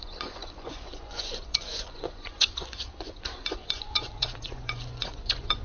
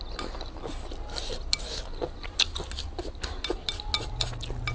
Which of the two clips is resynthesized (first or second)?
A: first